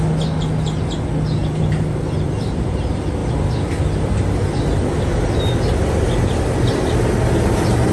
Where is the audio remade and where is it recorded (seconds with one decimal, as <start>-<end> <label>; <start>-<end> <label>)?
0.0-1.4 recorded; 1.4-2.8 remade; 2.8-7.9 recorded